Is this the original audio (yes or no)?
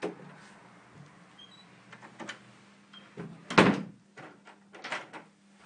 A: yes